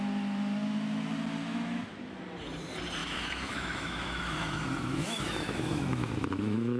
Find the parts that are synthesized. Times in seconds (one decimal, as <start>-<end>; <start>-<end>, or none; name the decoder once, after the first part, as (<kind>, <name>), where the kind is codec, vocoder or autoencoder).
3.0-6.8 (autoencoder, DAC-VAE)